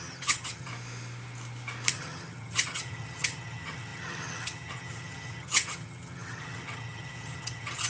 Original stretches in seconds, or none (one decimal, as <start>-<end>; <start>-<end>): 0.7-1.9